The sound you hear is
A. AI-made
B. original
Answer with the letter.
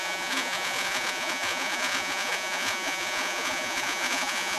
A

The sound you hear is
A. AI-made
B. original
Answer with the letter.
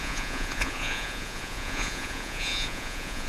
A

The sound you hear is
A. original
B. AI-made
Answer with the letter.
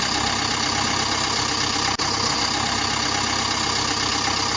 A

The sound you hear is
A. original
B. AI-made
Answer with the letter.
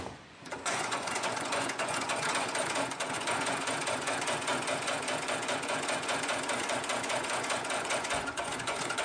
B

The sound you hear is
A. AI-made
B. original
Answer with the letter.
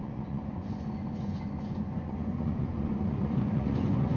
A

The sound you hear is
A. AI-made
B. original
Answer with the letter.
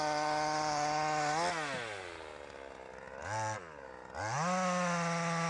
B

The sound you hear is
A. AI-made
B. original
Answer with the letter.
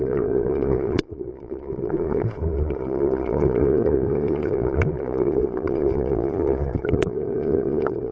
A